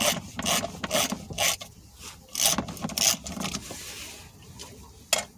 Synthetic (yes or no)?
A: no